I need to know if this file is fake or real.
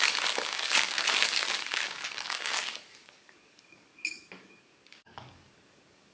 fake